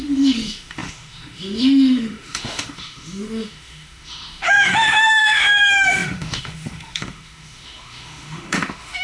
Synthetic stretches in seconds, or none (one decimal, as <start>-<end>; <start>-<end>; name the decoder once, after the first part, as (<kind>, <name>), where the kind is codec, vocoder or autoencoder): 0.0-9.0 (autoencoder, DAC-VAE)